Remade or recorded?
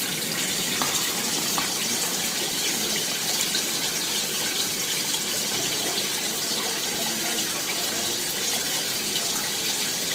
recorded